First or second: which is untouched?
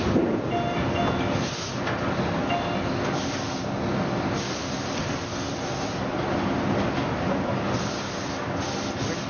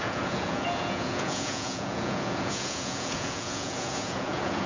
first